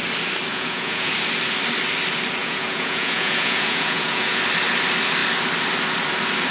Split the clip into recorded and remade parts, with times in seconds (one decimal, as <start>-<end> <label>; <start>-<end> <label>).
0.0-0.5 recorded; 0.5-1.1 remade; 1.1-2.4 recorded; 2.4-4.4 remade; 4.4-6.5 recorded